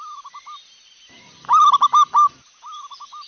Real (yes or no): yes